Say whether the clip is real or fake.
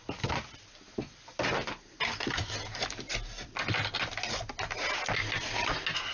real